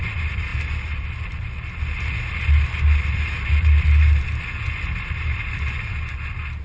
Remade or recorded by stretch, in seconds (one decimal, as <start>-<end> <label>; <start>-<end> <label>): 0.0-6.6 recorded